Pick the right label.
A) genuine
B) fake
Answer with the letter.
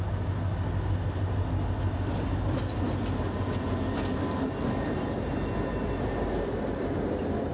A